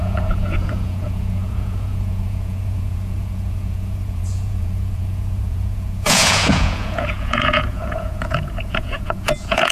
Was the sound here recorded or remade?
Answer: remade